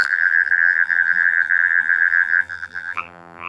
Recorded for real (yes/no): no